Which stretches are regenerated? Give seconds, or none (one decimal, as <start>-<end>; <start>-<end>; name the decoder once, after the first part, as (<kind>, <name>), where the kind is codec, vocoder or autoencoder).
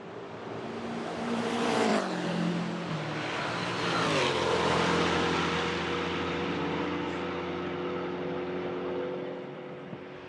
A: 0.0-1.9 (vocoder, BigVGAN v2); 4.2-10.3